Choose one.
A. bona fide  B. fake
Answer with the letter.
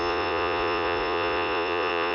B